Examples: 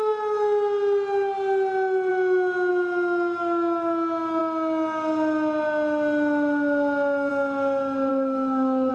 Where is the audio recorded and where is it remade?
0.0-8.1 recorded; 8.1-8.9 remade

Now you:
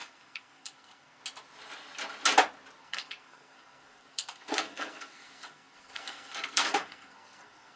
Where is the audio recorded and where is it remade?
0.0-1.2 remade; 1.2-2.8 recorded; 2.8-7.8 remade